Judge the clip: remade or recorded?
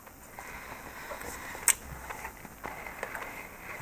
recorded